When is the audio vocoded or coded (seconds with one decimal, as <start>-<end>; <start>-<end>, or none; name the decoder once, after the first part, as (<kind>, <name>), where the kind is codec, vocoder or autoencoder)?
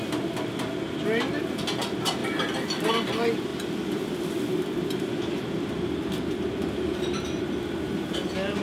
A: none